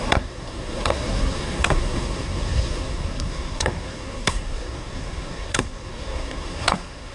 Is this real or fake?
fake